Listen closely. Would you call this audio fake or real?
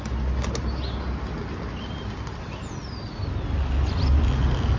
real